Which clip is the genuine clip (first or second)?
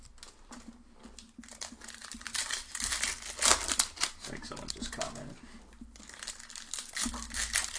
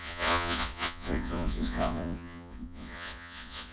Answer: first